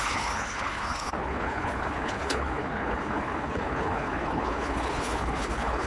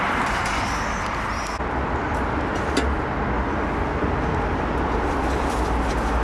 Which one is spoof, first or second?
first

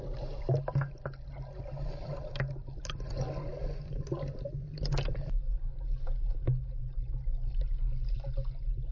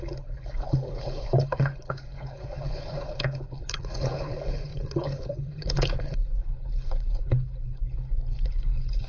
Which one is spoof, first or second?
second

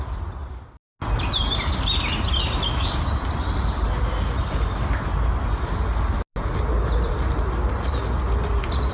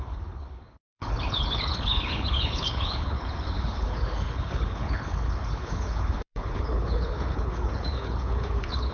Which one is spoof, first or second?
second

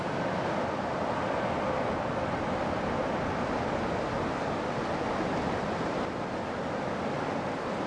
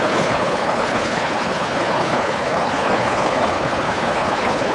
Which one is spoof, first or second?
second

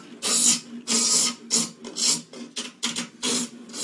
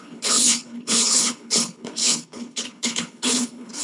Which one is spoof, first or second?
second